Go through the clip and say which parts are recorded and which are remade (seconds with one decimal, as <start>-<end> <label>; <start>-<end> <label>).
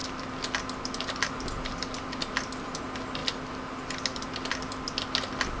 0.0-5.6 recorded